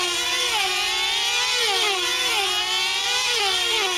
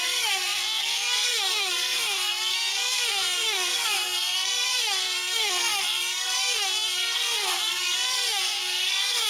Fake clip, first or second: second